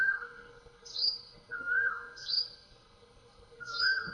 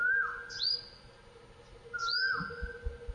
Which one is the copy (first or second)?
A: first